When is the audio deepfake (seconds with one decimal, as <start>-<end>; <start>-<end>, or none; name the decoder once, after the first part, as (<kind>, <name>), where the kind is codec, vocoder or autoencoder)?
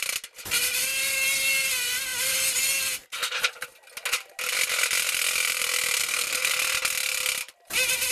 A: 6.0-6.5 (codec, SNAC)